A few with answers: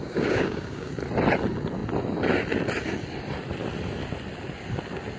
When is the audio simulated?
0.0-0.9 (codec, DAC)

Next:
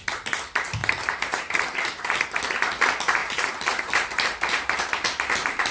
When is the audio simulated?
0.8-2.4 (vocoder, BigVGAN v2); 3.2-4.8